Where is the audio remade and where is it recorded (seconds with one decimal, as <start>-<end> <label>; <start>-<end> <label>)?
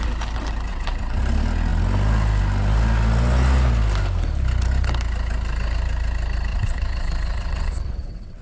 0.0-0.7 recorded; 0.7-1.2 remade; 1.2-6.5 recorded; 6.5-8.4 remade